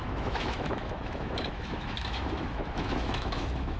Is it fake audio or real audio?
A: fake